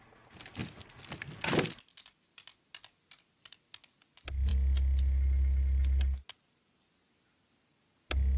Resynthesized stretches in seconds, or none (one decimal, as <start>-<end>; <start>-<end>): none